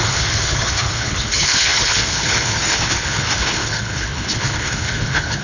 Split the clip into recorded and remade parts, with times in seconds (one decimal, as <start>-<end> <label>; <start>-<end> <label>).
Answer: 0.0-5.4 remade